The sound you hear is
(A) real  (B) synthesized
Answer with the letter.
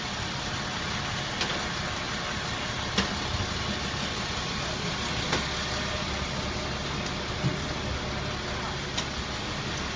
A